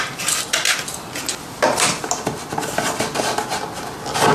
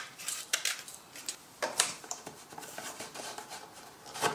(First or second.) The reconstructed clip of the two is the second